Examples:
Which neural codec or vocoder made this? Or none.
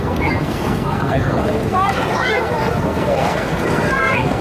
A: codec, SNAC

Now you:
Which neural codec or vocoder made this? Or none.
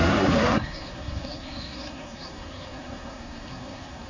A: codec, SNAC